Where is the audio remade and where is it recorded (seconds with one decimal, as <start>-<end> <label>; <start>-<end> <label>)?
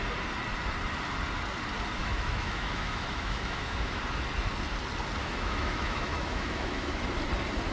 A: 0.0-2.0 recorded; 2.0-4.0 remade; 4.0-5.2 recorded; 5.2-7.0 remade; 7.0-7.7 recorded